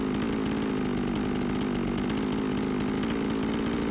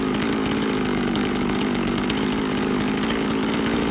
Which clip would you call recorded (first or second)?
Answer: first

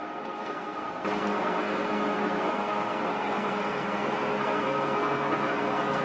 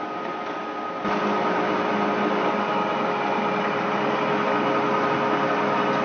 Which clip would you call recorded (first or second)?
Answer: second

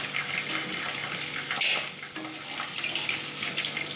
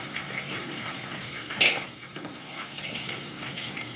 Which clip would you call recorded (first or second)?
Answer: first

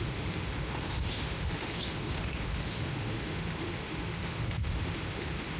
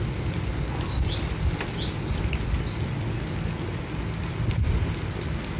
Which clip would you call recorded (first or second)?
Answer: second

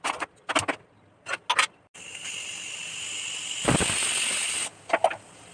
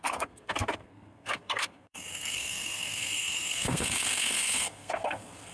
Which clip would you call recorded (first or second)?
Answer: first